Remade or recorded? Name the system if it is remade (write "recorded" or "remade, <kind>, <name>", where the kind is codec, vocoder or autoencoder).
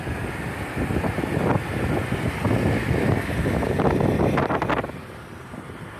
recorded